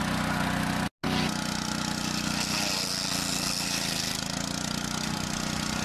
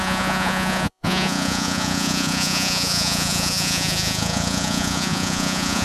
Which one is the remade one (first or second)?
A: second